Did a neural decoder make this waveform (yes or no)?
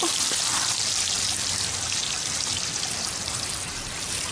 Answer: no